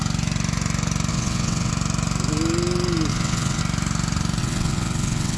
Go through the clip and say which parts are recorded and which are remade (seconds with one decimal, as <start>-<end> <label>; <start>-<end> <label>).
0.0-1.1 recorded; 1.1-1.7 remade; 1.7-3.1 recorded; 3.1-3.6 remade; 3.6-4.4 recorded; 4.4-5.4 remade